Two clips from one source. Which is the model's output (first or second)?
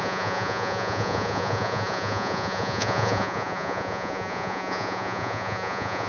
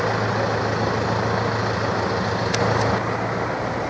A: first